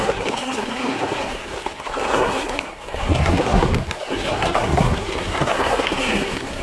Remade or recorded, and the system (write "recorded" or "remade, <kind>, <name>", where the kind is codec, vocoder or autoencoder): remade, codec, SNAC